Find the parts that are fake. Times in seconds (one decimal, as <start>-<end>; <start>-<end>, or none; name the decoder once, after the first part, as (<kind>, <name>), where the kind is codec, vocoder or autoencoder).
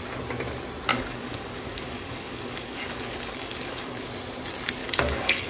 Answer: 0.9-4.0 (codec, DAC); 4.8-5.5